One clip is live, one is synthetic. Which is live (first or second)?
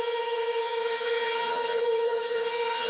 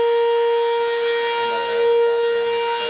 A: second